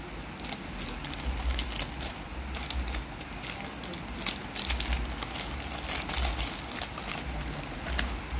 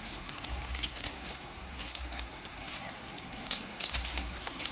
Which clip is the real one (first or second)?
first